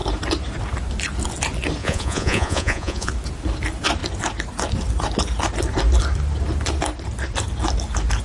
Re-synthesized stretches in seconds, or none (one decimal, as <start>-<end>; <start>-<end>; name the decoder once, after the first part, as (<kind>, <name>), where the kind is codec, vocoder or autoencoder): 1.8-3.1 (vocoder, Vocos)